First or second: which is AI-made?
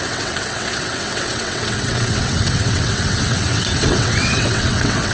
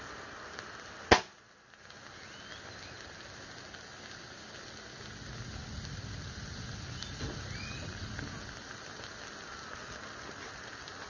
first